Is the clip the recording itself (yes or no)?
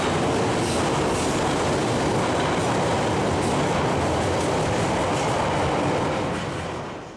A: yes